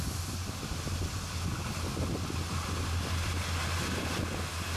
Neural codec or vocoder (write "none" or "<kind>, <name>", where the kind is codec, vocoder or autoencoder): none